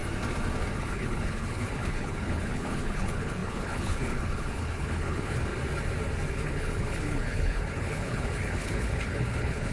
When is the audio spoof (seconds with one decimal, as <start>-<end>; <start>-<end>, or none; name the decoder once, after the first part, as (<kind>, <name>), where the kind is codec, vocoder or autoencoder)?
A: 0.8-5.5 (codec, HILCodec); 6.3-9.7